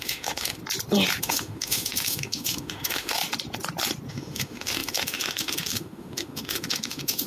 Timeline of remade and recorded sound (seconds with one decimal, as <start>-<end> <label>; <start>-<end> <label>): 0.0-0.6 remade; 0.6-1.2 recorded; 1.2-3.2 remade; 3.2-4.1 recorded; 4.1-7.3 remade